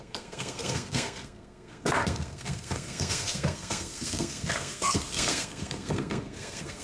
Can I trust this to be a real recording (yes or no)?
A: no